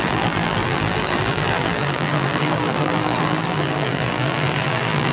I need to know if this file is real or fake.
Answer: fake